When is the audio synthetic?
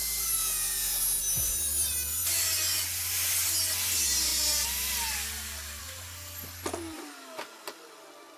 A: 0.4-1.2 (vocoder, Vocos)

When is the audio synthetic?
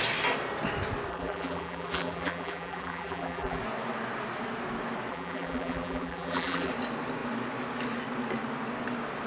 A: 1.1-3.6 (vocoder, BigVGAN v2); 5.1-6.7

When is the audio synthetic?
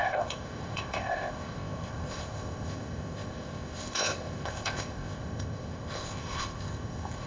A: 0.0-7.3 (codec, ZipCodec)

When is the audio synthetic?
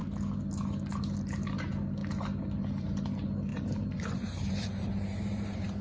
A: 3.5-5.8 (vocoder, BigVGAN v2)